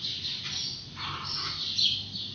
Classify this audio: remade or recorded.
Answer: recorded